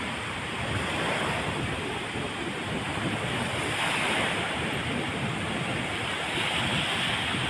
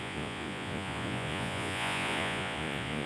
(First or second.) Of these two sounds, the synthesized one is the second